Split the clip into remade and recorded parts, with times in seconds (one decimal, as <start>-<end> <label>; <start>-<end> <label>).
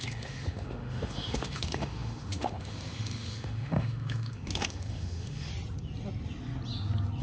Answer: 0.0-5.5 remade; 5.5-7.2 recorded